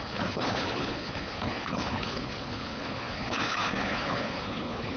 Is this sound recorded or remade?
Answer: remade